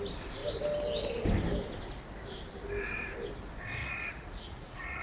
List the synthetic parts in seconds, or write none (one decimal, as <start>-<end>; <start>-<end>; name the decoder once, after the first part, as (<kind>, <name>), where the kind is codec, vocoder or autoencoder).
3.8-5.0 (vocoder, Vocos)